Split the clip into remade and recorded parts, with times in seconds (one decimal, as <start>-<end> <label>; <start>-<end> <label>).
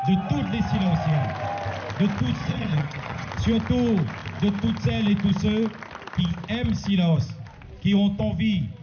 0.0-2.4 recorded; 2.4-3.3 remade; 3.3-8.8 recorded